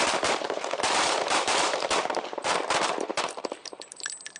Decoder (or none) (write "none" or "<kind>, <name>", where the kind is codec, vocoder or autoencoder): vocoder, BigVGAN v2